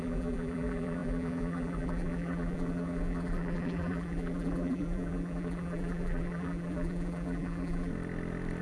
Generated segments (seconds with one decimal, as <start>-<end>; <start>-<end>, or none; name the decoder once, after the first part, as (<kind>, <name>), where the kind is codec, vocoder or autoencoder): 0.0-7.9 (vocoder, BigVGAN v2)